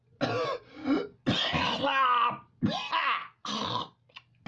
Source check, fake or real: real